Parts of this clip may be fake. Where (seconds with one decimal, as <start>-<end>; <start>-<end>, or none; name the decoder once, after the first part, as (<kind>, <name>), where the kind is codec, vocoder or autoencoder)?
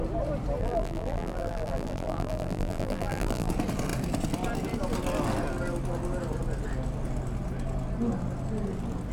0.6-3.5 (vocoder, BigVGAN v2)